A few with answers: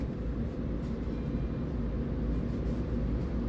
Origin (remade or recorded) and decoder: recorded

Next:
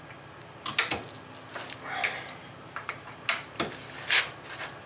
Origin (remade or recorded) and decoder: recorded